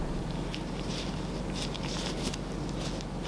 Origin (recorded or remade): recorded